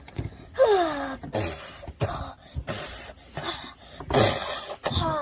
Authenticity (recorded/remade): recorded